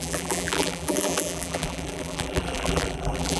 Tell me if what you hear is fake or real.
fake